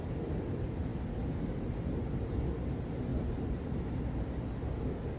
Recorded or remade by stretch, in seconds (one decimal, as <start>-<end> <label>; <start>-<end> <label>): 0.0-3.1 recorded; 3.1-4.1 remade; 4.1-5.2 recorded